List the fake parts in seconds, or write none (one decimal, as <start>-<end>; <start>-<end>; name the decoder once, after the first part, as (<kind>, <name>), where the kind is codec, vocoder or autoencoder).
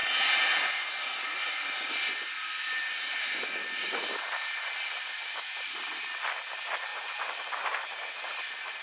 6.9-8.4 (vocoder, BigVGAN v2)